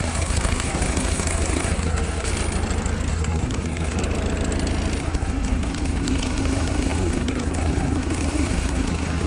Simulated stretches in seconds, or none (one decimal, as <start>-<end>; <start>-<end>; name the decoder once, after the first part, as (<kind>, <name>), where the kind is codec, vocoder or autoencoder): 0.0-2.3 (codec, SNAC); 3.1-4.0; 5.0-9.3